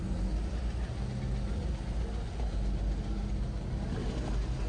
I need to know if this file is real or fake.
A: real